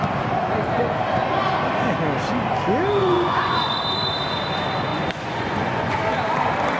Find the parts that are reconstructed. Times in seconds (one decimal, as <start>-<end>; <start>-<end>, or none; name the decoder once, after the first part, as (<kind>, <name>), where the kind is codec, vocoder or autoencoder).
3.0-3.8 (vocoder, Vocos); 4.9-5.9